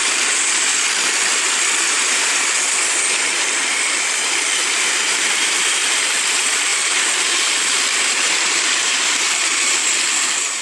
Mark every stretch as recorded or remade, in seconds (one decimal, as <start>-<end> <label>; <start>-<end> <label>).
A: 0.0-0.7 remade; 0.7-1.9 recorded; 1.9-10.6 remade